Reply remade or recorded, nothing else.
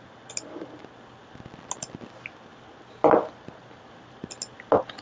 recorded